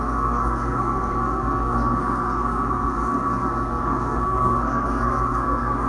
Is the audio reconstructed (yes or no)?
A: yes